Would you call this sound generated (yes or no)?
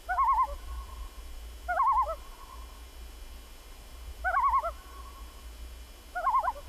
no